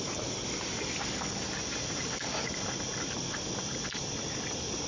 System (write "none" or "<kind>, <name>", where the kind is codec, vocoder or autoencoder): none